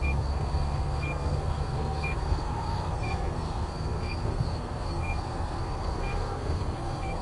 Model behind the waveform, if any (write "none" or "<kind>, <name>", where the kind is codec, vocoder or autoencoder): codec, SNAC